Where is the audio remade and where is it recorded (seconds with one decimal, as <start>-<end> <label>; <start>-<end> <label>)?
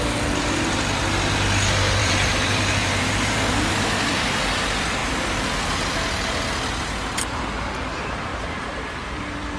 0.0-2.0 recorded; 2.0-3.4 remade; 3.4-8.3 recorded; 8.3-9.2 remade; 9.2-9.6 recorded